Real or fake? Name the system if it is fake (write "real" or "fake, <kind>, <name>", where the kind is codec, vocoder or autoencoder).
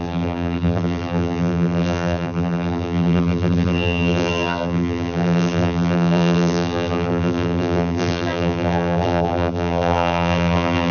fake, vocoder, BigVGAN v2